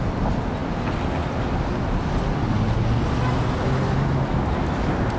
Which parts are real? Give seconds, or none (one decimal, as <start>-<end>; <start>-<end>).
0.0-5.2